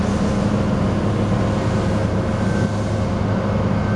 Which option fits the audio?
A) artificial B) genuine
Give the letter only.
B